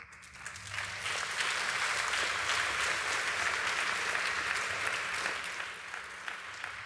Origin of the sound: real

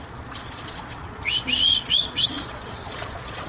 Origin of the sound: fake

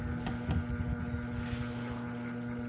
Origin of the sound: real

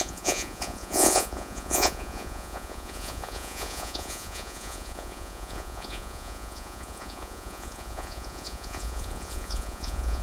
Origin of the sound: fake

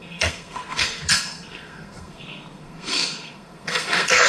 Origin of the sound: fake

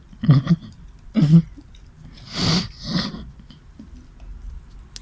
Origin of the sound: real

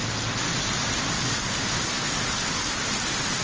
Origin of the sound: real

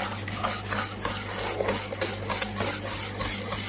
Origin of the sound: real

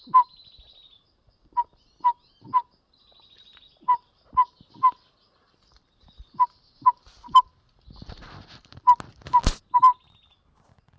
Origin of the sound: real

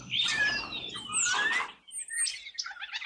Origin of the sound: real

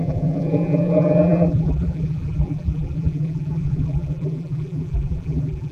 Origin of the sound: fake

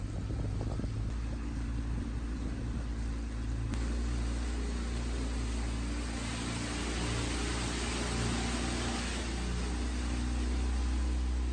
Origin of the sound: real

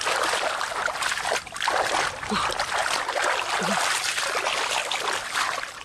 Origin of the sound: real